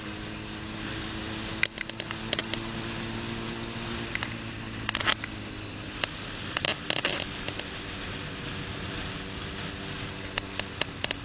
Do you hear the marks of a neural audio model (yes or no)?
no